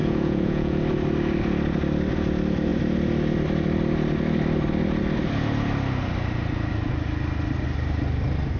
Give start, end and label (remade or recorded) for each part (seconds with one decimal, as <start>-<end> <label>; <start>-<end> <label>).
0.0-0.8 remade; 0.8-8.6 recorded